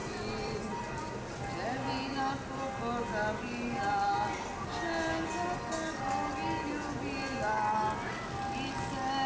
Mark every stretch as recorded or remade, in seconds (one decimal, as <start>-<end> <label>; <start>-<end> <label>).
0.0-0.8 remade; 0.8-9.3 recorded